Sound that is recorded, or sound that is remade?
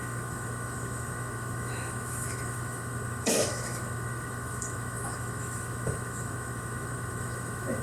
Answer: remade